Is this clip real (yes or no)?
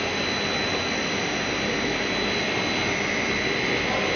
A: yes